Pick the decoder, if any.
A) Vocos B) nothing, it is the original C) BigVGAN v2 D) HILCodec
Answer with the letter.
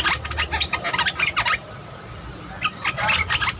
B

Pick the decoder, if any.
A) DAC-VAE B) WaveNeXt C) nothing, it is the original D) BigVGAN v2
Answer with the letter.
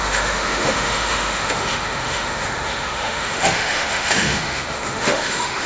A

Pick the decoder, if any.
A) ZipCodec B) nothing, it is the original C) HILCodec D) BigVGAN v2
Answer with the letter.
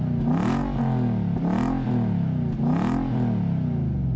B